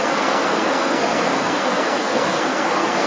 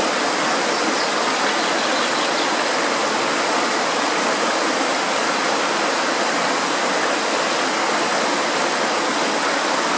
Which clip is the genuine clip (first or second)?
second